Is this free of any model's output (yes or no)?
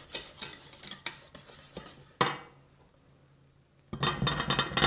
yes